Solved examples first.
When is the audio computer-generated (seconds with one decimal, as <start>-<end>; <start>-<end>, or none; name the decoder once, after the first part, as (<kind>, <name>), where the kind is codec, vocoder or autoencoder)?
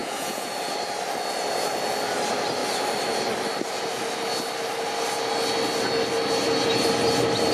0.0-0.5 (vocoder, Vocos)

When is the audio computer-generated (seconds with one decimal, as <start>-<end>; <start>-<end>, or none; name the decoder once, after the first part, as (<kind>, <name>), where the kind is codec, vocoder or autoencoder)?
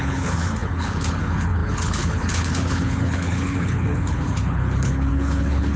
0.0-5.8 (codec, HILCodec)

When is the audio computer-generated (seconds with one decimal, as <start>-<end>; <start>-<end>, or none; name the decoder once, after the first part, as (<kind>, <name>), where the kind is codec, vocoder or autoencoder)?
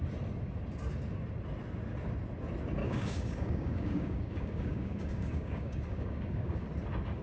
2.8-6.7 (codec, DAC)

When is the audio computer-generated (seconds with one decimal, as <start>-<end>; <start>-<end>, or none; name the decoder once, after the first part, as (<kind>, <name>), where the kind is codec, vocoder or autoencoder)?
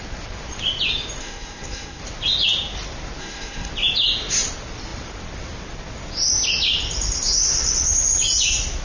1.2-2.0 (codec, SNAC); 3.2-3.7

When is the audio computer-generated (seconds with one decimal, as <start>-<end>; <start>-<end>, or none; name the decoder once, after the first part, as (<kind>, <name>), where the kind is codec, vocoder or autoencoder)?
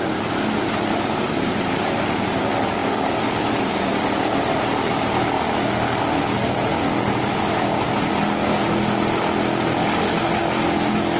none